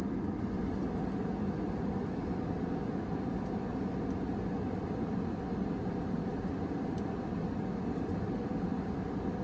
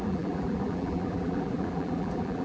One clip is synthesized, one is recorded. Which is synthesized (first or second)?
second